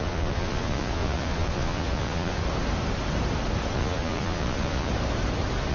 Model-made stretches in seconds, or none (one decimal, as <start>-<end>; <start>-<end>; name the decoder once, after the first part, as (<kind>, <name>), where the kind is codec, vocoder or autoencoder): 0.0-2.4 (vocoder, Vocos); 3.7-4.9